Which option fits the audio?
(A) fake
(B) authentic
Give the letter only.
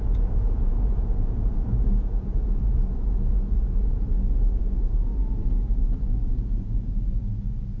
A